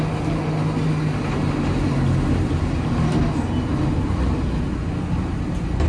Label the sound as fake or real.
real